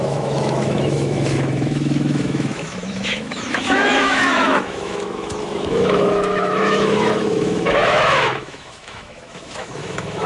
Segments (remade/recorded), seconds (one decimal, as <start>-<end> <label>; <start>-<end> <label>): 0.0-10.3 remade